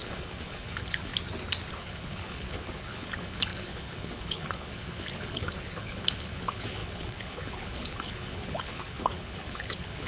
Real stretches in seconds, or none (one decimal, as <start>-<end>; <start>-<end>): 1.1-1.7